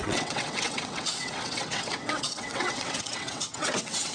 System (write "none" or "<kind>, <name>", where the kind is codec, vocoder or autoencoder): vocoder, WaveNeXt